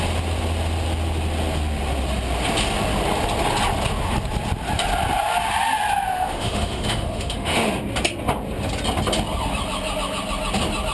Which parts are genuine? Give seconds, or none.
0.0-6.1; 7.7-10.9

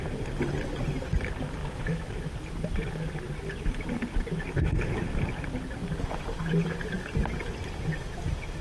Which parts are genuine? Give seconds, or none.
0.0-1.6; 2.3-8.6